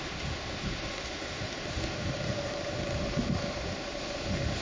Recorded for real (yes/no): no